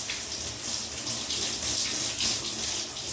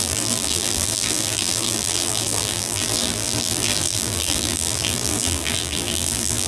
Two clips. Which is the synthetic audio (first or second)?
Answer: second